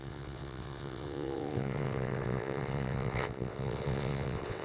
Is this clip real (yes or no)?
no